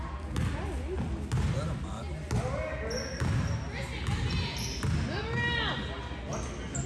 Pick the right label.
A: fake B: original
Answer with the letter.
B